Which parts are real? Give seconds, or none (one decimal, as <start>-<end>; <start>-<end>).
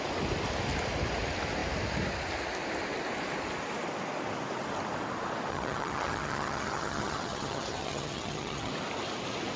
0.0-5.5; 8.7-9.6